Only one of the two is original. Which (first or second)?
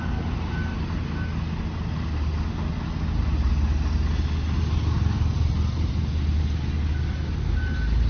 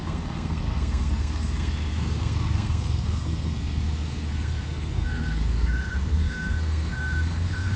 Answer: first